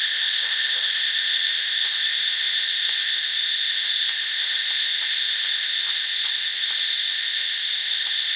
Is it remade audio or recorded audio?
remade